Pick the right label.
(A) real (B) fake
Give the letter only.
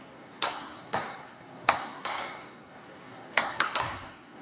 B